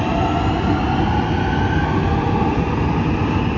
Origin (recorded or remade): recorded